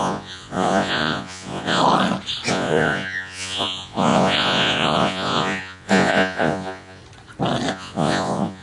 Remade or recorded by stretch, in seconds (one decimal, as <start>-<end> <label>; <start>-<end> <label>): 0.0-1.8 remade; 1.8-2.5 recorded; 2.5-7.0 remade; 7.0-7.7 recorded; 7.7-8.6 remade